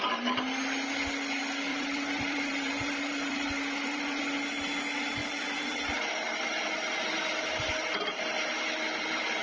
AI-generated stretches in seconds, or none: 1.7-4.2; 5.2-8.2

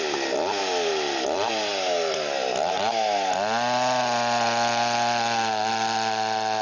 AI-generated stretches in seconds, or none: 0.0-1.7; 5.7-6.6

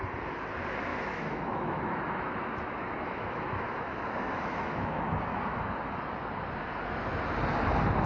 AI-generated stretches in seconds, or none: 0.9-5.8

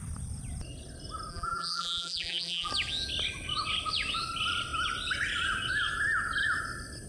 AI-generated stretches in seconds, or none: 1.3-2.7

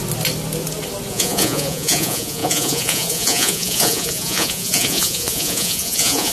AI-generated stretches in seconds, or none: 1.1-6.3

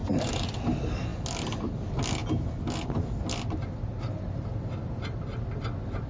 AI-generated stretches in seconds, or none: 0.0-0.5